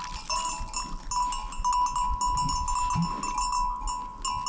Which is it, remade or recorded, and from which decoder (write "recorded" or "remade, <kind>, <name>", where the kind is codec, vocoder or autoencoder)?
recorded